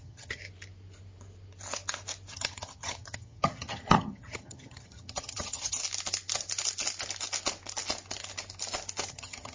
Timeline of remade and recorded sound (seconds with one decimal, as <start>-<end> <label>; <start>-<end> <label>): 0.0-0.4 remade; 0.4-2.3 recorded; 2.3-5.8 remade; 5.8-9.1 recorded; 9.1-9.5 remade